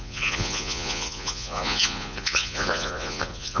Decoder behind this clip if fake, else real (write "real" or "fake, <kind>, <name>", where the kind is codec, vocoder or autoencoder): fake, vocoder, Vocos